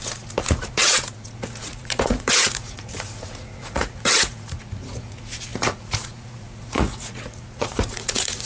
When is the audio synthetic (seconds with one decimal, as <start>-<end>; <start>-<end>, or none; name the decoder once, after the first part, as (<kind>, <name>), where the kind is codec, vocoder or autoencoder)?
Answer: 0.0-8.4 (vocoder, Vocos)